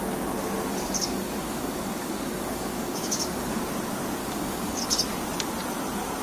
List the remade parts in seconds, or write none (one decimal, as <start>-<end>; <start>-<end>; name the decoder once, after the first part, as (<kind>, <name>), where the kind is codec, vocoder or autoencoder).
0.7-3.6 (codec, DAC); 4.2-4.8